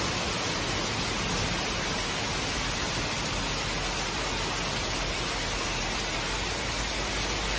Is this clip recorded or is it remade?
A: recorded